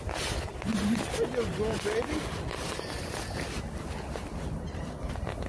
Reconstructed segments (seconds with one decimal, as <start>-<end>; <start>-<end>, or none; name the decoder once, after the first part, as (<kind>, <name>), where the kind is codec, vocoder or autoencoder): none